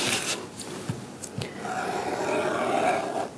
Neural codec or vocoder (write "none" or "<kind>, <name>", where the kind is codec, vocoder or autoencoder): none